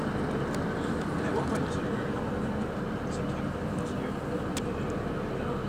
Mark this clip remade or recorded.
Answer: recorded